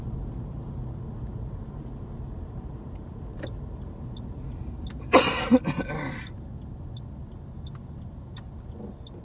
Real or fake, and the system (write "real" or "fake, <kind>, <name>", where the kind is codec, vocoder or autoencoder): real